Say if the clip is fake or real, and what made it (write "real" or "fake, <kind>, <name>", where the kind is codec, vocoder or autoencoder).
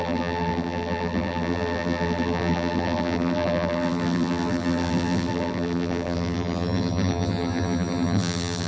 fake, vocoder, BigVGAN v2